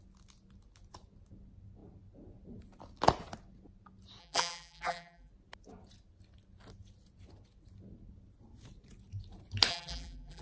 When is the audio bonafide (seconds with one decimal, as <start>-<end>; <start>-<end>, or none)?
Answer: 0.0-4.2; 5.3-9.7